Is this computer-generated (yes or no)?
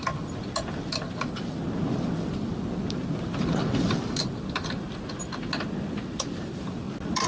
no